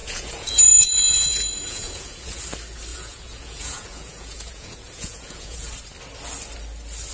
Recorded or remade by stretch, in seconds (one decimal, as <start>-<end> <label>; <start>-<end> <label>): 0.0-2.4 remade; 2.4-2.9 recorded; 2.9-5.7 remade; 5.7-7.1 recorded